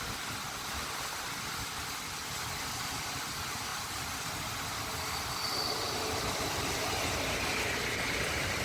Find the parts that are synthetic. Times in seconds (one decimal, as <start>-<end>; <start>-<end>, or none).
none

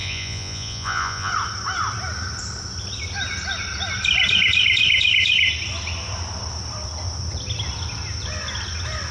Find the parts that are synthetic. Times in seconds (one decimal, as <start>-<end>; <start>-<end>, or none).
0.0-1.3

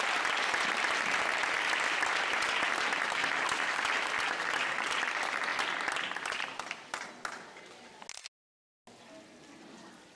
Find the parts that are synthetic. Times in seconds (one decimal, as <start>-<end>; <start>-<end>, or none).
none

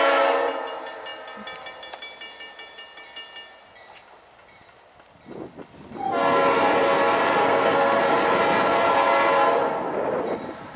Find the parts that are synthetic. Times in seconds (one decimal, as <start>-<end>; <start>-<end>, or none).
7.4-8.0

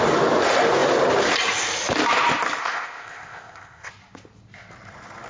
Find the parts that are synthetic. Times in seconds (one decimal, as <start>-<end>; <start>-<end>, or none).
2.6-3.9

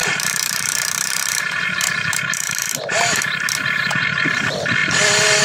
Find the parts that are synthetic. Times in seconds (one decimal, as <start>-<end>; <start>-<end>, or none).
0.0-2.7; 3.8-4.3

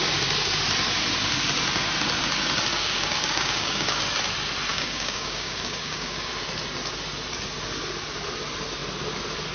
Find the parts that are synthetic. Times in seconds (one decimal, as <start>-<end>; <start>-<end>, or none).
2.7-4.0; 4.7-6.3

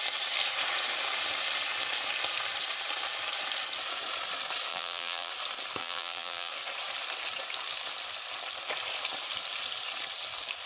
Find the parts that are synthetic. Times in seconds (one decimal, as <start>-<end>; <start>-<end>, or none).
4.7-5.3; 5.8-6.5